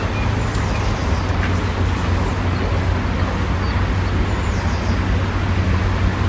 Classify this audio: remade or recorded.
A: recorded